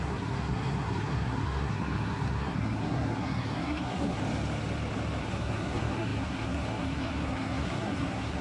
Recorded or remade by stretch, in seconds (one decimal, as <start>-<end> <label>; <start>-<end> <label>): 0.0-4.2 remade; 4.2-5.2 recorded; 5.2-8.4 remade